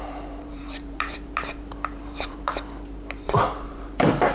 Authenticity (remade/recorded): remade